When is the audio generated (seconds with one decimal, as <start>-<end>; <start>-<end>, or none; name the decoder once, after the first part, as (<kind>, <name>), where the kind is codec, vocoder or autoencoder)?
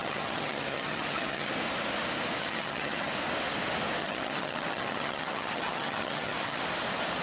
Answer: 0.0-1.5 (vocoder, HiFi-GAN); 2.4-3.1; 4.0-6.6